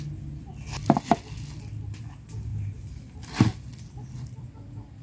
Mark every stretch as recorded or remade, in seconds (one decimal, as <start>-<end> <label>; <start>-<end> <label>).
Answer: 0.0-5.0 recorded